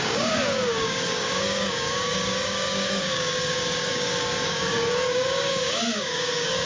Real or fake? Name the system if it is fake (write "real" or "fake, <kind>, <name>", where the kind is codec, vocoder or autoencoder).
fake, codec, DAC